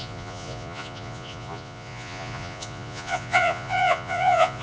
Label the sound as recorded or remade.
remade